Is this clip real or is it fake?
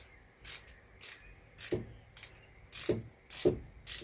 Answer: real